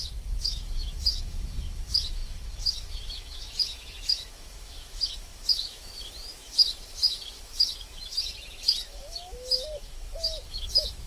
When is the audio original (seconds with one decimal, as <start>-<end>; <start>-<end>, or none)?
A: none